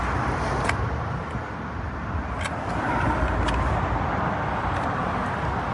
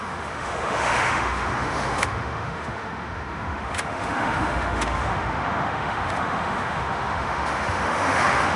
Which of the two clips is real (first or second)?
first